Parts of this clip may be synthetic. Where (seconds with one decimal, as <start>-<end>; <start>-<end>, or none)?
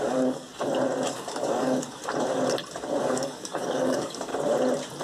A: 0.0-0.5; 1.1-2.0; 3.0-4.3